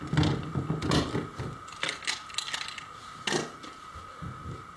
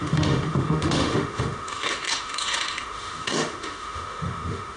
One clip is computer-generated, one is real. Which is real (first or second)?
first